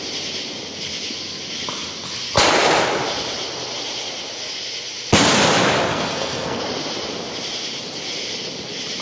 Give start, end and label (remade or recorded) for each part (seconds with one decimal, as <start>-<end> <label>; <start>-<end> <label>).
0.0-5.9 recorded; 5.9-6.6 remade; 6.6-9.0 recorded